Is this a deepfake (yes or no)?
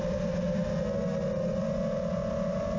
no